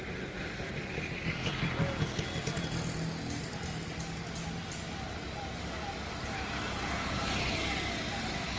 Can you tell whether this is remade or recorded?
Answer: recorded